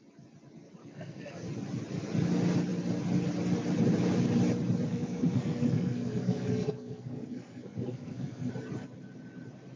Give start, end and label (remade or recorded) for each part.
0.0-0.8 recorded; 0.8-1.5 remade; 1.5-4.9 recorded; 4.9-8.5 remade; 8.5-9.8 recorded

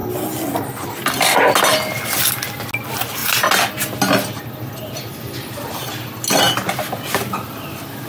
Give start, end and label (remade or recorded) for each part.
0.0-8.1 recorded

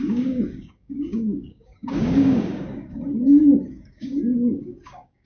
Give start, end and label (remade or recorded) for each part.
0.0-5.3 remade

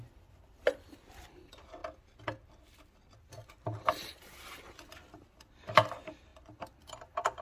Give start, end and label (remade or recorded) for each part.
0.0-1.8 remade; 1.8-3.2 recorded; 3.2-7.4 remade